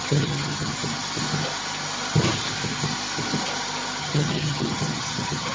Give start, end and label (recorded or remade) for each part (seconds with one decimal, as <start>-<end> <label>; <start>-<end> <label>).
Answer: 0.0-0.7 remade; 0.7-4.0 recorded; 4.0-5.5 remade